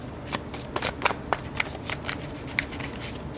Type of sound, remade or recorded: recorded